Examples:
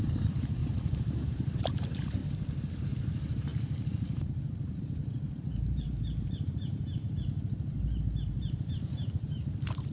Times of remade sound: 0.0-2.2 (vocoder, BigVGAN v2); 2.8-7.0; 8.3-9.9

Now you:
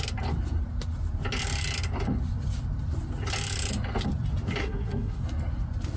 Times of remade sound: 4.6-5.2 (codec, SNAC)

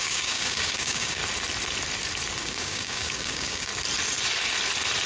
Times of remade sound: 0.0-1.2 (codec, DAC); 2.4-3.7